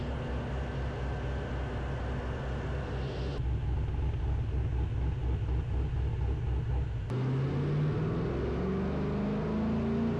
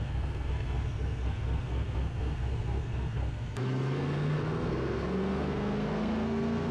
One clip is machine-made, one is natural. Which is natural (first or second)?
first